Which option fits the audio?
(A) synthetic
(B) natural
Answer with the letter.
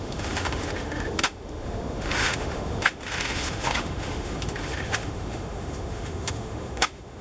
A